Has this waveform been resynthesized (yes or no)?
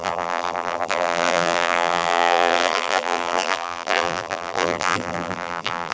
yes